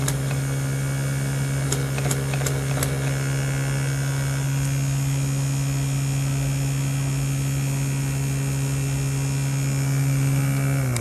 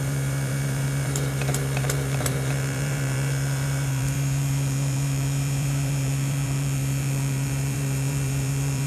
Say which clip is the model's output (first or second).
second